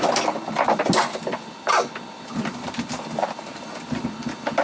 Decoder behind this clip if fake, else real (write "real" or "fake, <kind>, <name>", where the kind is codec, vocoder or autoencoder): real